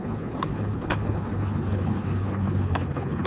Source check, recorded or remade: remade